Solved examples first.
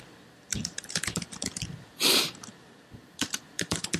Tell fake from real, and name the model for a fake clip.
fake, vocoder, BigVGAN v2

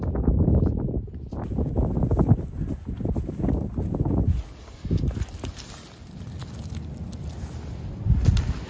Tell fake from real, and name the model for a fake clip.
real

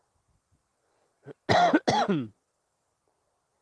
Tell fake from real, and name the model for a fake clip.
real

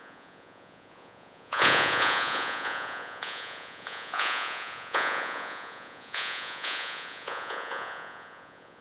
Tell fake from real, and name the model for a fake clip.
fake, vocoder, Vocos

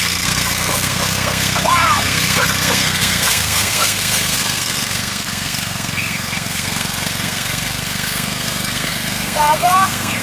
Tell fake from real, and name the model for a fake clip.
fake, codec, SNAC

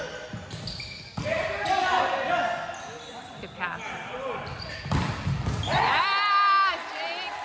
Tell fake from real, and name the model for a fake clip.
real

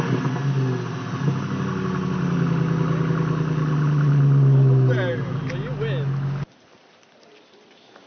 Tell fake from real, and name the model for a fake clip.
real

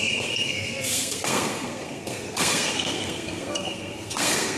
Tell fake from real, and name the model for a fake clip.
fake, codec, SNAC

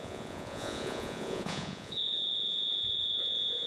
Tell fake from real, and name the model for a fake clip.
fake, vocoder, Vocos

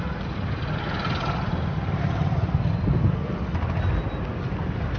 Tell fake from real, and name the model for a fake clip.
real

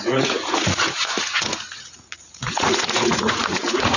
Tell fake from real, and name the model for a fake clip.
fake, vocoder, Vocos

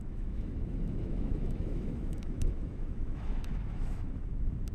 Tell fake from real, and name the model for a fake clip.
fake, autoencoder, DAC-VAE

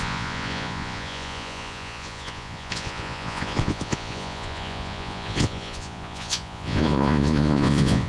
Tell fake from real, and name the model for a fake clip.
fake, vocoder, Vocos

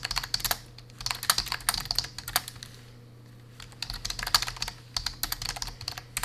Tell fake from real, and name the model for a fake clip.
real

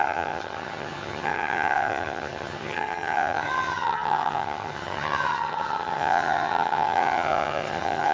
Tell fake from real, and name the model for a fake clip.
fake, vocoder, HiFi-GAN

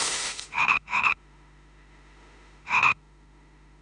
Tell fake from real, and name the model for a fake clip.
fake, autoencoder, DAC-VAE